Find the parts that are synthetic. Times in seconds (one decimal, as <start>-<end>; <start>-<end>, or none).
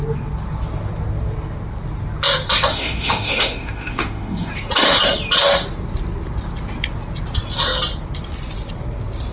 2.7-4.5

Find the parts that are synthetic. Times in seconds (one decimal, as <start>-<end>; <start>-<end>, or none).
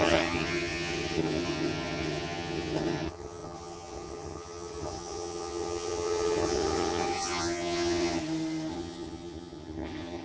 0.0-8.2; 8.7-10.2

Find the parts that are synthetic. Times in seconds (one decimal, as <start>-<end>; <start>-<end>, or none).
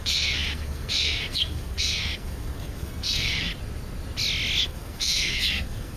0.0-3.5; 4.6-6.0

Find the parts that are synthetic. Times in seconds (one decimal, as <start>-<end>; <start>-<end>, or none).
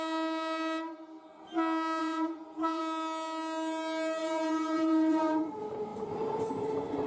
2.0-2.8; 4.2-5.5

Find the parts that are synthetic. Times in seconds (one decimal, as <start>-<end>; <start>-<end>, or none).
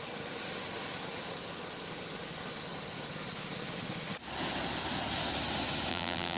5.9-6.4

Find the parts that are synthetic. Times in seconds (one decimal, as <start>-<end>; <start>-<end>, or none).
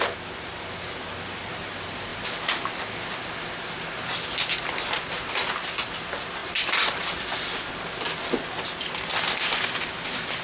none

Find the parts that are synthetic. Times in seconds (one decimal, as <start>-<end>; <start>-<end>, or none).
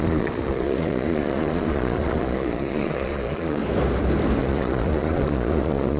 0.0-3.6; 4.4-6.0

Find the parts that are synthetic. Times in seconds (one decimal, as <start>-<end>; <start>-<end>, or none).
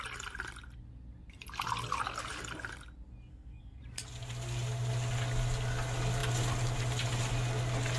3.3-3.8